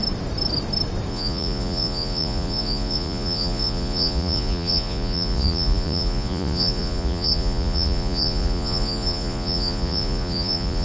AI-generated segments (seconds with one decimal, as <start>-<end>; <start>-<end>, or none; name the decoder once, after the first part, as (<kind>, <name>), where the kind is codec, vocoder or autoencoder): 1.1-10.8 (vocoder, Vocos)